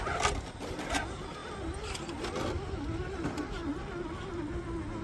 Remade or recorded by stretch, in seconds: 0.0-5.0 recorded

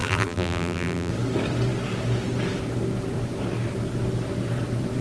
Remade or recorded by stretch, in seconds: 0.0-1.1 remade; 1.1-5.0 recorded

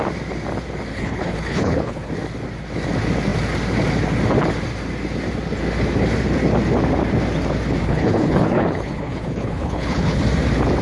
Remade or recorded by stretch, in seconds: 0.0-0.9 recorded; 0.9-2.1 remade; 2.1-7.8 recorded; 7.8-10.2 remade; 10.2-10.8 recorded

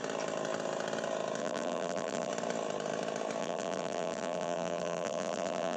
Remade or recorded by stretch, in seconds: 0.0-1.4 recorded; 1.4-2.3 remade; 2.3-3.4 recorded; 3.4-5.8 remade